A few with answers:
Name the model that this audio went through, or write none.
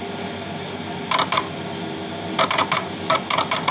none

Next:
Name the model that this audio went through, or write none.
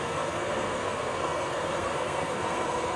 codec, SNAC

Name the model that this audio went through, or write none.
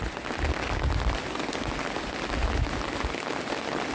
none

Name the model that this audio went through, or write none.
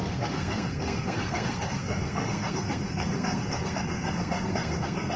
codec, SNAC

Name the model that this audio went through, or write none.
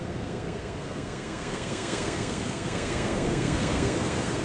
codec, SNAC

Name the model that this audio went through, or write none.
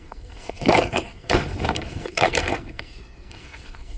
codec, SNAC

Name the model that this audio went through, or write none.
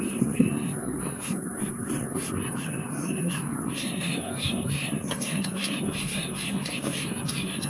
codec, SNAC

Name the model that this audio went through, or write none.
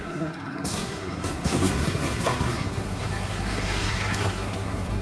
codec, SNAC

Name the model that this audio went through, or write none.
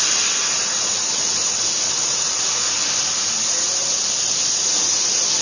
none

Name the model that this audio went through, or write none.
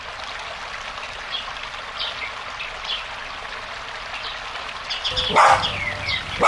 none